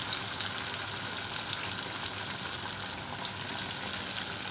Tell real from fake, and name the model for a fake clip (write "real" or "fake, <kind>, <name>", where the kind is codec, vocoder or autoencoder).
real